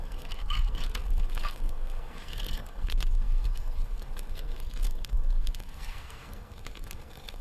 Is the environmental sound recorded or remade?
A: remade